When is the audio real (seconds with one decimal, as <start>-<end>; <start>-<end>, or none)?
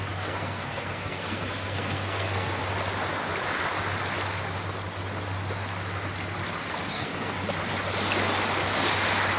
2.6-6.9; 7.4-9.4